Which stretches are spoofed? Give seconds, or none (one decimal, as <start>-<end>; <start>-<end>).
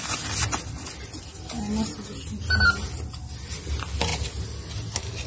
none